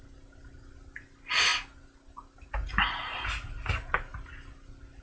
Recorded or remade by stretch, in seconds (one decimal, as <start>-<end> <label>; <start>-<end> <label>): 0.0-5.0 recorded